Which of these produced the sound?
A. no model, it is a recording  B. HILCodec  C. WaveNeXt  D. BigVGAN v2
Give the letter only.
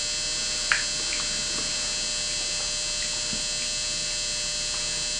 A